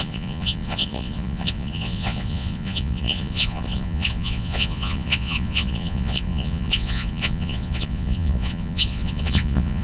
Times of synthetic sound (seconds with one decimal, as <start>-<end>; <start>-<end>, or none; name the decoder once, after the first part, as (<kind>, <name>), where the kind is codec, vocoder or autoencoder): 0.0-9.8 (vocoder, Vocos)